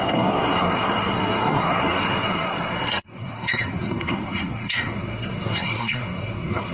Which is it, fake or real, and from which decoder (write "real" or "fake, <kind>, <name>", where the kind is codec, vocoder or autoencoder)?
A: fake, codec, SNAC